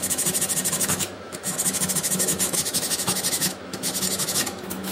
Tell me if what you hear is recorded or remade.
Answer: remade